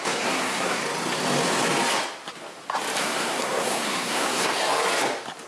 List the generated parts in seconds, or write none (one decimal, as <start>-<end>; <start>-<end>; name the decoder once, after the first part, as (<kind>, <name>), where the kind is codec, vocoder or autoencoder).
0.0-0.8 (codec, SNAC); 3.0-4.5

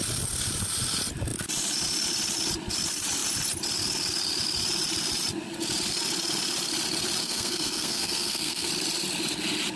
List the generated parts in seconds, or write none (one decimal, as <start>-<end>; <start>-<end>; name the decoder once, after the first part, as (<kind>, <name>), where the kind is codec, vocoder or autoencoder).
7.2-8.7 (codec, SNAC)

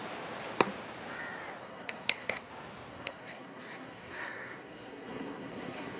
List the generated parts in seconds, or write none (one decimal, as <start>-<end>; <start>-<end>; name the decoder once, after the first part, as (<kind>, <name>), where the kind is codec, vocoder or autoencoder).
1.6-2.5 (codec, SNAC); 2.9-6.0

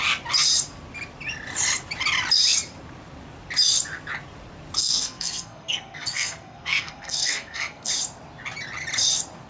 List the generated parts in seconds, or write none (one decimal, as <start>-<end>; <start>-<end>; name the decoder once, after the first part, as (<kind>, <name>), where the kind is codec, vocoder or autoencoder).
4.8-7.9 (codec, SNAC)

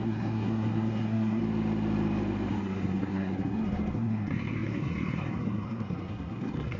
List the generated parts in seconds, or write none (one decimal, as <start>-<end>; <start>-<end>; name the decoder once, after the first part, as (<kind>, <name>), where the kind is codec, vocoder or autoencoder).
0.0-1.4 (codec, SNAC); 2.5-6.8

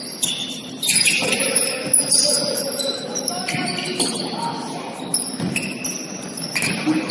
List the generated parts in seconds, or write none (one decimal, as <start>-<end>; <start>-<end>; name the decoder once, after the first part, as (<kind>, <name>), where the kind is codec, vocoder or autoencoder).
none